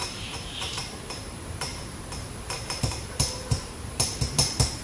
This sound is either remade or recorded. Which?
remade